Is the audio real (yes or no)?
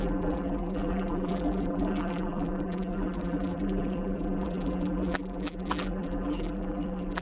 no